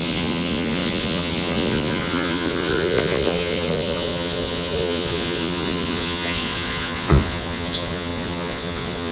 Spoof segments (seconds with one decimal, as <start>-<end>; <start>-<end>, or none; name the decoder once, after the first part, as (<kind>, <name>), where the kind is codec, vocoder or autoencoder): 0.0-9.1 (vocoder, Vocos)